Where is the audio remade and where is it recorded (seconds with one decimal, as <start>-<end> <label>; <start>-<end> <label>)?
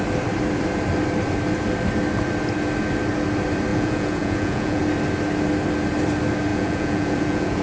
0.0-3.7 recorded; 3.7-4.8 remade; 4.8-6.5 recorded; 6.5-7.6 remade